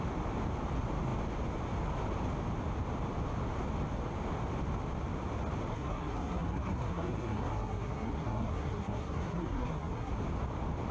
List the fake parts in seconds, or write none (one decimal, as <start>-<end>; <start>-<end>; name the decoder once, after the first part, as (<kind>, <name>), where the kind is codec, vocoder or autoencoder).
5.7-10.1 (codec, SNAC)